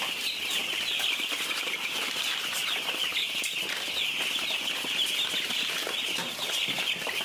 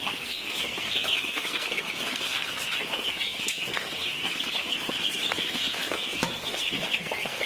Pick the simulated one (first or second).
second